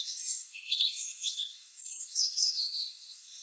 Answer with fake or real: fake